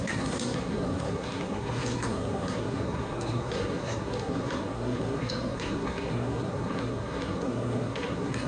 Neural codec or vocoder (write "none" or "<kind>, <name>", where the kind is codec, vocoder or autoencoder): codec, SNAC